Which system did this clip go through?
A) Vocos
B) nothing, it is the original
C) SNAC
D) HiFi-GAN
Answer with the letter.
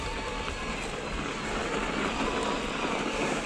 B